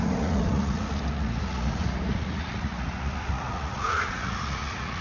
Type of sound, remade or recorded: remade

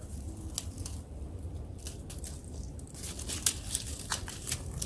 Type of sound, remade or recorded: recorded